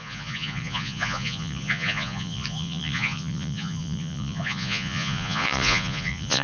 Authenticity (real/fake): fake